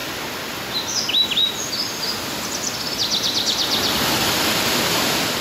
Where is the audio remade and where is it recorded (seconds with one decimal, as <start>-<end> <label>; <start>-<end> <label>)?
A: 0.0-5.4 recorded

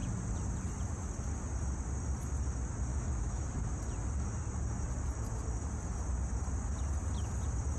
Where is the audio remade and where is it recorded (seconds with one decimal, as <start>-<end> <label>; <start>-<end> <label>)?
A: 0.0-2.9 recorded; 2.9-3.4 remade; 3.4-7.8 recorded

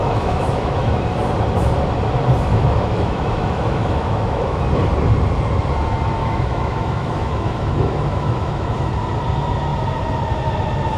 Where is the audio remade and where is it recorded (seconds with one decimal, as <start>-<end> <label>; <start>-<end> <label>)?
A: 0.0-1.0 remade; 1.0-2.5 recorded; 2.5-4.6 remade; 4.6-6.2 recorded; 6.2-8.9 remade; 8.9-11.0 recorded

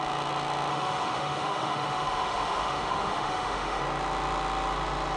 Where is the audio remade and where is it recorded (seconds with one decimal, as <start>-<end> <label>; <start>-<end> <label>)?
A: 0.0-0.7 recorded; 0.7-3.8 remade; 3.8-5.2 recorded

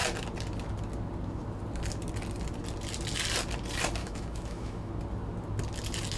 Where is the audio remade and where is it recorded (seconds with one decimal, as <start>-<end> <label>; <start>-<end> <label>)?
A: 0.0-4.0 recorded; 4.0-4.9 remade; 4.9-6.2 recorded

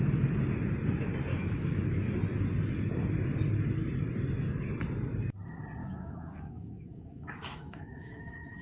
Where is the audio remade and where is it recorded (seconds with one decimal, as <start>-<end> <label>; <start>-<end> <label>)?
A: 0.0-1.3 recorded; 1.3-2.1 remade; 2.1-5.8 recorded; 5.8-8.6 remade

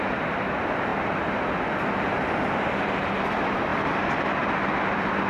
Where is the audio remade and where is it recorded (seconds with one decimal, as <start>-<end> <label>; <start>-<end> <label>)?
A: 0.0-5.3 recorded

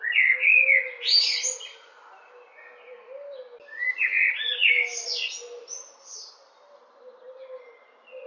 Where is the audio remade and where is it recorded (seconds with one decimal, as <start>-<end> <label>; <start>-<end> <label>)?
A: 0.0-8.3 recorded